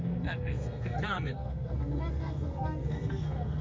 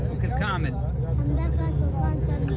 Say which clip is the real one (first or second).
second